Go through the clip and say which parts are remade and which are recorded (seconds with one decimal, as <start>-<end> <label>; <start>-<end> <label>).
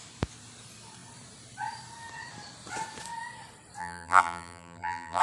0.0-3.8 recorded; 3.8-5.2 remade